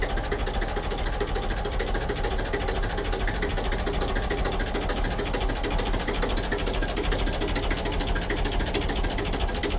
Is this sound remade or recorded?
recorded